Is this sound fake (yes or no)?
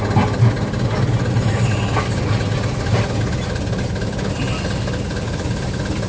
no